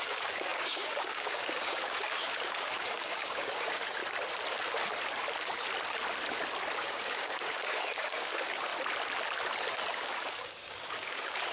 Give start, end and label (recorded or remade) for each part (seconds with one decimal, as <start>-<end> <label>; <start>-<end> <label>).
0.0-4.0 remade; 4.0-6.8 recorded; 6.8-8.7 remade; 8.7-9.9 recorded; 9.9-11.5 remade